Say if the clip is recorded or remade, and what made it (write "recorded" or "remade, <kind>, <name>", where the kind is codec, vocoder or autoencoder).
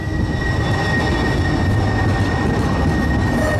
recorded